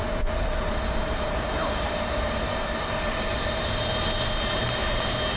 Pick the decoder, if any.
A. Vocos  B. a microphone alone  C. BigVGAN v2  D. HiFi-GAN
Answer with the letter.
C